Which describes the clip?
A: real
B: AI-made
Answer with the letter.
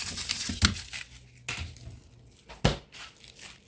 A